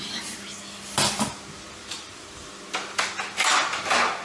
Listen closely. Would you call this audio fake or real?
real